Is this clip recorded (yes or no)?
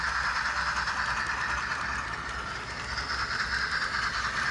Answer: yes